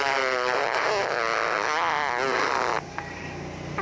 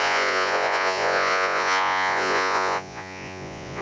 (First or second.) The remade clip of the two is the second